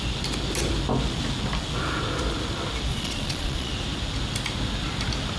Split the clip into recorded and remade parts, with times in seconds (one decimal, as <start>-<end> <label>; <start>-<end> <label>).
0.0-2.9 recorded; 2.9-3.7 remade; 3.7-5.4 recorded